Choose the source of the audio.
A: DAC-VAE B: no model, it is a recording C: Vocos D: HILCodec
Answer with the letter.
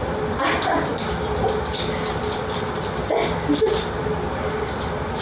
B